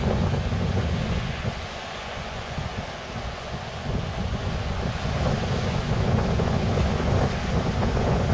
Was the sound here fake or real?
fake